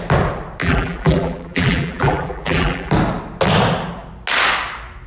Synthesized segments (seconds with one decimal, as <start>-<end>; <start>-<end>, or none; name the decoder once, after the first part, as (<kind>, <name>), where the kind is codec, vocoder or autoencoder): 0.6-2.9 (vocoder, BigVGAN v2)